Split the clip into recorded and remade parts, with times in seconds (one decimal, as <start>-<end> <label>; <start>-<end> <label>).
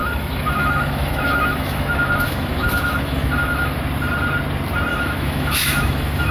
0.0-3.8 remade; 3.8-4.9 recorded; 4.9-6.3 remade